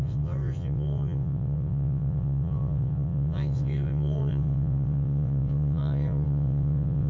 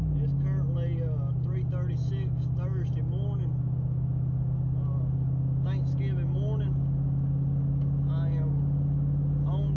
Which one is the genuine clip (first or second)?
second